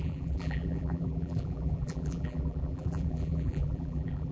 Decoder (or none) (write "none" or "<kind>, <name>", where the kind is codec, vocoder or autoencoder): vocoder, BigVGAN v2